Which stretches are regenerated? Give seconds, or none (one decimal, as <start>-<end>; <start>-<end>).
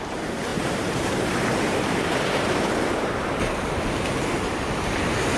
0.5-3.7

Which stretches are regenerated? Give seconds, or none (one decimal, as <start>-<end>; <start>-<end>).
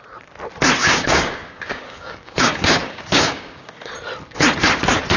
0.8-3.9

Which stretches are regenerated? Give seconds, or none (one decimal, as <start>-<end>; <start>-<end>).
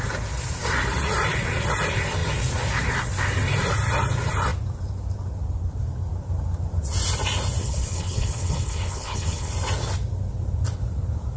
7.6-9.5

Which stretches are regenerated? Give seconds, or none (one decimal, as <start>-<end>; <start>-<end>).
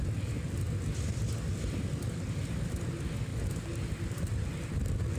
none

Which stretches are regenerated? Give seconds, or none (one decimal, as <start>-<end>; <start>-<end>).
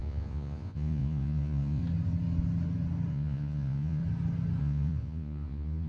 0.0-1.8; 3.1-4.0; 4.6-5.9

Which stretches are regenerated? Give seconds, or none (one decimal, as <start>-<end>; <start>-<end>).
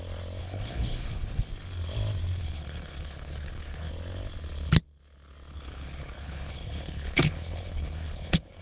0.4-1.5; 2.4-3.9; 5.5-8.6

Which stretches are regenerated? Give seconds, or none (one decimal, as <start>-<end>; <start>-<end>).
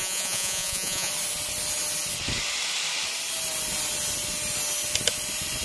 0.0-1.1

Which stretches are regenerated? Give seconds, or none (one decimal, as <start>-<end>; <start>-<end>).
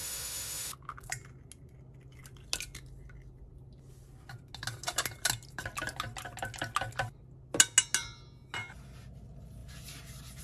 0.0-0.7